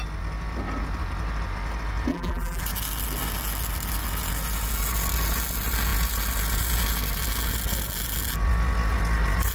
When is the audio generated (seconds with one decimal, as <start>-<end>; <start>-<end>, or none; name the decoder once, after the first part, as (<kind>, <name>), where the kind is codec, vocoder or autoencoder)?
2.1-2.6 (vocoder, BigVGAN v2)

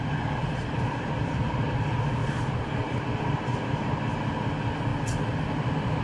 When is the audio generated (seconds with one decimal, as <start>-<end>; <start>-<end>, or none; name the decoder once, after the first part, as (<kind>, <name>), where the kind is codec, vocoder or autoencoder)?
2.2-3.0 (vocoder, BigVGAN v2)

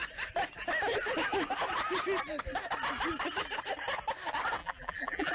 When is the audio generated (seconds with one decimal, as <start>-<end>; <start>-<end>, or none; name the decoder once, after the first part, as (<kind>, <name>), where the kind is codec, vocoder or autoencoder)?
4.6-5.3 (vocoder, BigVGAN v2)